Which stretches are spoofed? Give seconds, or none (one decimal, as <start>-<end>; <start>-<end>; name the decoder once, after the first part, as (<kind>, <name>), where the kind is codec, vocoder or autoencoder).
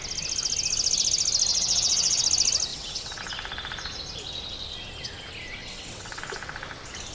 1.5-2.2 (vocoder, WaveNeXt); 2.7-3.2; 5.6-6.2